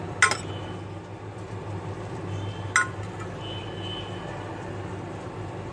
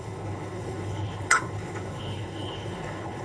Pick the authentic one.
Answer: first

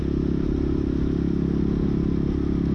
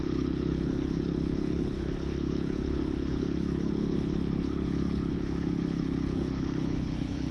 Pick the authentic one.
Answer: first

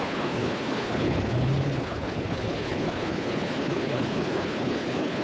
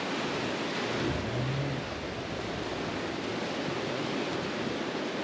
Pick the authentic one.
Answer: second